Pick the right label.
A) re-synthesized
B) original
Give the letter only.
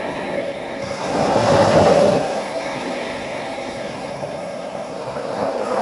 A